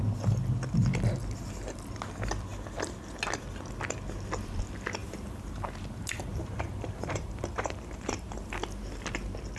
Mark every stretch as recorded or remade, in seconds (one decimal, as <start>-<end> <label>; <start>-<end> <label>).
0.0-5.0 recorded; 5.0-8.5 remade; 8.5-9.6 recorded